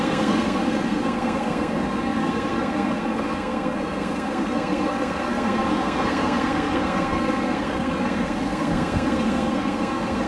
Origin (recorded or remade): remade